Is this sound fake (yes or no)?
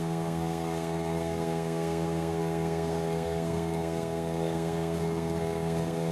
yes